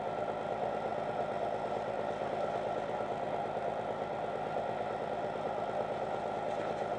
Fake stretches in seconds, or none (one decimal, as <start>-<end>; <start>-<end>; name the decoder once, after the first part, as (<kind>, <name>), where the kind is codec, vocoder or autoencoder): none